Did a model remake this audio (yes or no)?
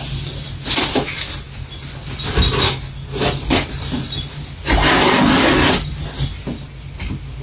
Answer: no